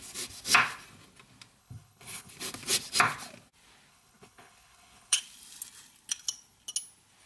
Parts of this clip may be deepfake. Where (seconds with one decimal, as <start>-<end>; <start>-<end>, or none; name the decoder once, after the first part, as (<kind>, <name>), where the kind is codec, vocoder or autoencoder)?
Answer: 1.6-2.3 (codec, HILCodec); 3.9-5.2